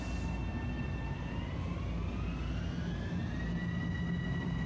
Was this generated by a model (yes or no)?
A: no